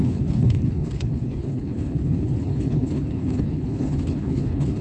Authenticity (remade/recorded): remade